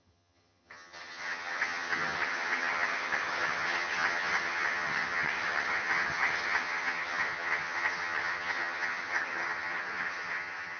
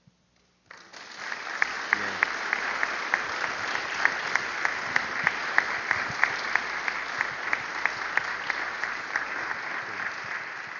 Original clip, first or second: second